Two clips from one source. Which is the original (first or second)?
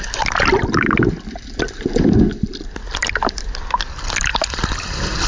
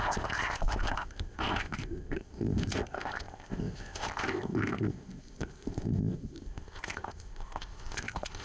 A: first